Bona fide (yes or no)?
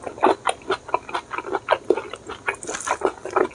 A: yes